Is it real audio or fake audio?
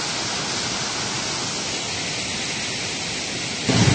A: real